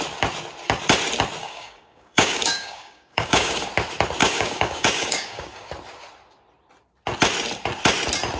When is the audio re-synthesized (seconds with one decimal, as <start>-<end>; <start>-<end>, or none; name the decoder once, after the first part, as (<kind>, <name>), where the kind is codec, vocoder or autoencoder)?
1.4-3.7 (codec, DAC); 4.2-5.7